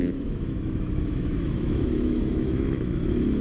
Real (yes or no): no